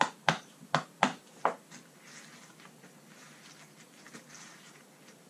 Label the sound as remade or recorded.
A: recorded